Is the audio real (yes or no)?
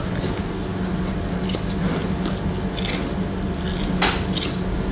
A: yes